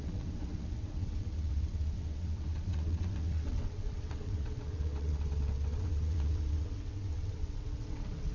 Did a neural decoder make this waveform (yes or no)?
yes